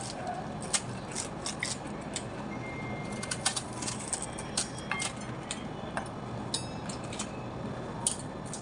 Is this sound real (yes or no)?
yes